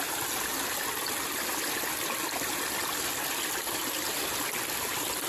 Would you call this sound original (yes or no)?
yes